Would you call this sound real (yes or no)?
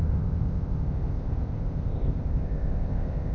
no